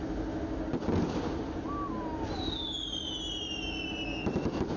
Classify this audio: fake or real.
real